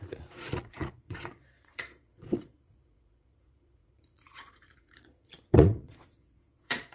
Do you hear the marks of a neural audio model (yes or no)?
yes